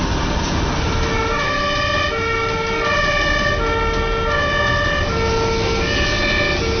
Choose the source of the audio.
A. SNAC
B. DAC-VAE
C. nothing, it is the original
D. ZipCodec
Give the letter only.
C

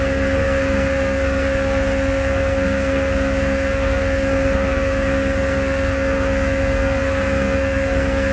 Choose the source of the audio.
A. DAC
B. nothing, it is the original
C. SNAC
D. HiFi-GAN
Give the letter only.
C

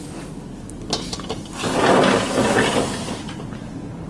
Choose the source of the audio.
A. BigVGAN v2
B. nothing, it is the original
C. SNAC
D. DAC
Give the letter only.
B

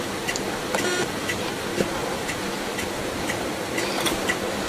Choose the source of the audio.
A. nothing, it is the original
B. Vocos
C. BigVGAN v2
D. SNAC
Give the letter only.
A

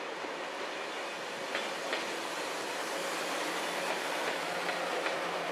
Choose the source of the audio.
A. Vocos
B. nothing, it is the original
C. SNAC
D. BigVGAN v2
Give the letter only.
B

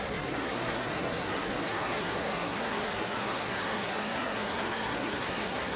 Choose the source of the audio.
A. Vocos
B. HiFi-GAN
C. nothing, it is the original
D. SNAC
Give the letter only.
D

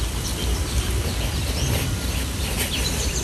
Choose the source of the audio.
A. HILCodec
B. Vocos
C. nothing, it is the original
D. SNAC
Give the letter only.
C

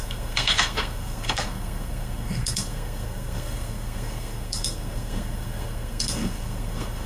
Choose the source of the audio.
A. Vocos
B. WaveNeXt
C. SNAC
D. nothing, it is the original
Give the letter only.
C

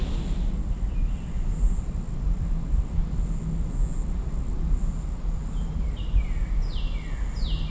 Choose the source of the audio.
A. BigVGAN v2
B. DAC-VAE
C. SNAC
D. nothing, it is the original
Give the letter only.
D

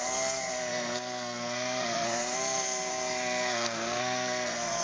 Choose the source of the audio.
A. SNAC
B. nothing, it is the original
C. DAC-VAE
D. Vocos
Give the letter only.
A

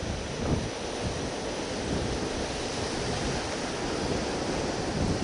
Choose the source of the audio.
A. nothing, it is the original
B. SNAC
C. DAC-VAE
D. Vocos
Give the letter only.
A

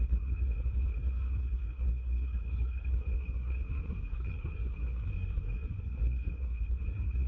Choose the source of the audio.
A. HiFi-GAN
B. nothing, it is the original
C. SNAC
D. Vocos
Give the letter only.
C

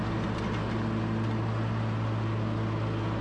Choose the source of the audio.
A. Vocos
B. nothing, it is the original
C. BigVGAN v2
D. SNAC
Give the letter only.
B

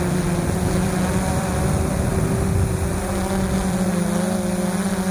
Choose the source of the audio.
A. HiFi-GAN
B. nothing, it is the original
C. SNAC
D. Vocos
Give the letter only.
B